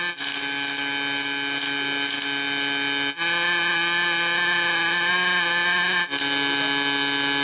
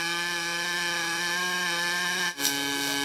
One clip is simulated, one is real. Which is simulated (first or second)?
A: second